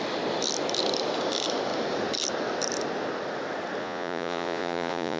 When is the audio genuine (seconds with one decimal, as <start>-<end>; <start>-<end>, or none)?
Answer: 0.0-3.8